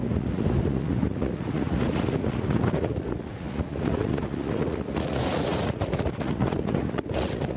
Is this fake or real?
fake